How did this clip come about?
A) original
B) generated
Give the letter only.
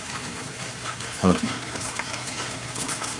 B